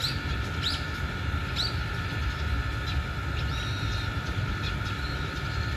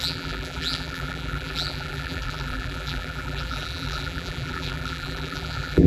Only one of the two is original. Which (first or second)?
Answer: first